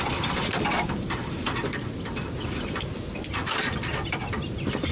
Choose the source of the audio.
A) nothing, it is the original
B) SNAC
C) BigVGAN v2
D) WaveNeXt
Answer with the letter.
C